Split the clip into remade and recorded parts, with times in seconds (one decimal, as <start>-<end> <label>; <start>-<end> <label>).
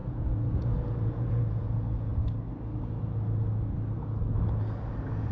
0.0-2.1 remade; 2.1-5.3 recorded